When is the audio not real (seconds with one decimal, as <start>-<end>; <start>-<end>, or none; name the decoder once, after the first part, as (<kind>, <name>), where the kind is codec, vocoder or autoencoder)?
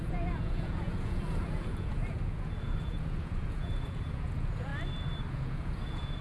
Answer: 0.0-4.7 (vocoder, Vocos); 5.3-6.2